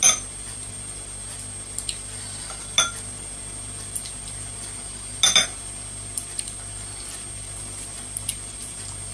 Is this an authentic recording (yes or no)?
yes